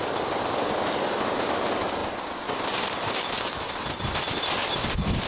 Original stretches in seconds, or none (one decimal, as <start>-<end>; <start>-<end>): 0.0-5.3